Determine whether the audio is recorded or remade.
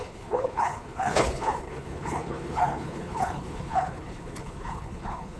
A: remade